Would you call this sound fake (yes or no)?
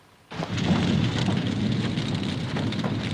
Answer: no